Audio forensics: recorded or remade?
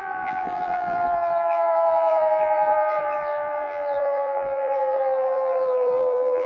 remade